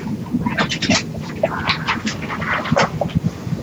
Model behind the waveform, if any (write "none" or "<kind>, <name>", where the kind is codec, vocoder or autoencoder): none